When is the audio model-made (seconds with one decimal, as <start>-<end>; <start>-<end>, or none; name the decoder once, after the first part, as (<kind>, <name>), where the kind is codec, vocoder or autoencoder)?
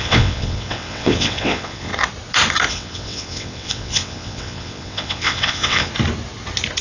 0.0-1.9 (vocoder, WaveNeXt); 2.7-5.9